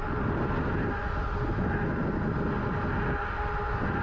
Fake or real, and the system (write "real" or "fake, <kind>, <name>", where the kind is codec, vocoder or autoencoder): real